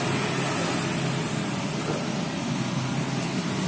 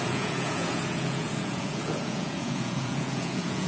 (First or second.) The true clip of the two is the first